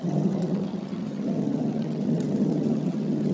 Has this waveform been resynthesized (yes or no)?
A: yes